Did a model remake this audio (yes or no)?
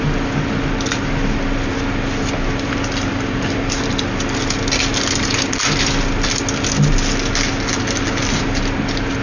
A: no